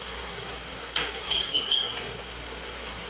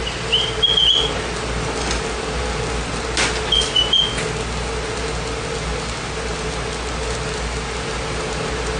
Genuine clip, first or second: second